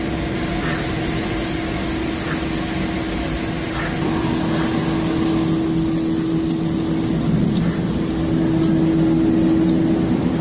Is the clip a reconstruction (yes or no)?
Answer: no